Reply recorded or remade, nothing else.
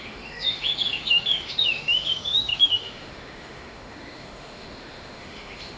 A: remade